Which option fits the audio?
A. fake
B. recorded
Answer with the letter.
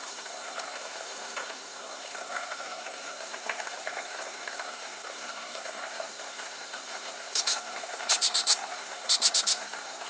A